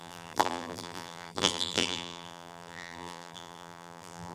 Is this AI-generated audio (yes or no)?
yes